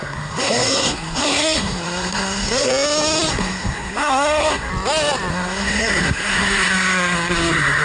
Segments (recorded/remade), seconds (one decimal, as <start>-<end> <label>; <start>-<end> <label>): 0.0-2.7 remade; 2.7-3.3 recorded; 3.3-4.7 remade; 4.7-5.3 recorded; 5.3-7.8 remade